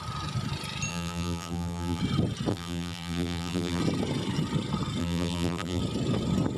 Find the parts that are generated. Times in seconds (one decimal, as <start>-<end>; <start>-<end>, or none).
0.9-2.0; 2.5-3.8; 5.0-5.8